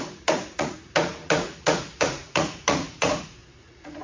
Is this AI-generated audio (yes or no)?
yes